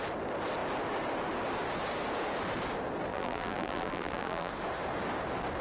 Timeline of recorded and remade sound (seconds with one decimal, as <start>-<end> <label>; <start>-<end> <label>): 0.0-3.1 recorded; 3.1-4.5 remade; 4.5-5.6 recorded